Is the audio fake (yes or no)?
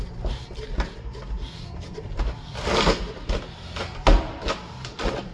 no